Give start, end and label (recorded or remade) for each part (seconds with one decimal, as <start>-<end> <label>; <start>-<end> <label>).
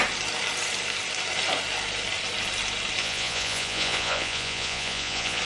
0.0-3.0 recorded; 3.0-5.4 remade